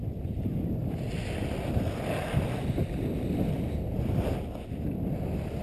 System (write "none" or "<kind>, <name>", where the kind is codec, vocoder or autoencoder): none